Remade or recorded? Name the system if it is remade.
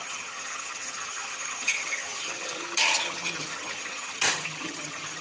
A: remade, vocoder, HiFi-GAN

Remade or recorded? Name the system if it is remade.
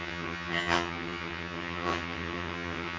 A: remade, vocoder, HiFi-GAN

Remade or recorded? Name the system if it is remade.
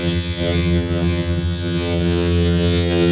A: remade, vocoder, HiFi-GAN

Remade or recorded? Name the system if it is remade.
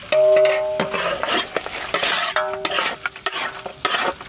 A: recorded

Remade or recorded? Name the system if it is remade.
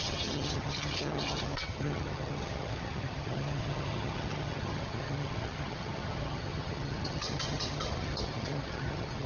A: remade, vocoder, HiFi-GAN